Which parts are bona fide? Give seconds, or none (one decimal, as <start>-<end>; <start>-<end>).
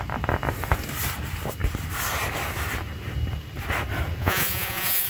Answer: 0.0-4.2